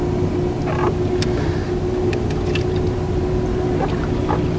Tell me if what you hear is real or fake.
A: real